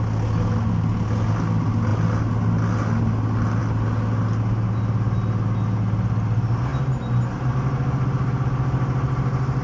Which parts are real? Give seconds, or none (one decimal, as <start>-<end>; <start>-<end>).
0.0-9.6